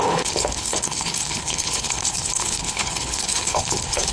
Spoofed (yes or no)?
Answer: yes